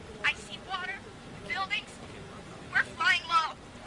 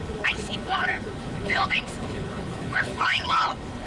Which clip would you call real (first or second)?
first